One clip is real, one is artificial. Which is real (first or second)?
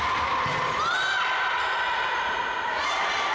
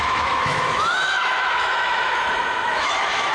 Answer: first